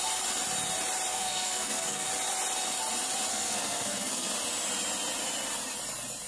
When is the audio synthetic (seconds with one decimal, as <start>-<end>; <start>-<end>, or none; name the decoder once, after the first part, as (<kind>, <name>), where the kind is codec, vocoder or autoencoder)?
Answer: 1.1-2.1 (codec, SNAC); 3.3-4.3